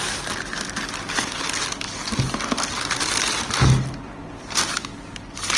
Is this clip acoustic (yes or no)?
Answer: yes